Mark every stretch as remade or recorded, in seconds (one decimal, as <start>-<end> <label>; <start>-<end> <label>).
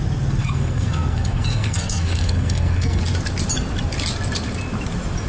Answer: 0.0-0.4 recorded; 0.4-3.0 remade; 3.0-5.3 recorded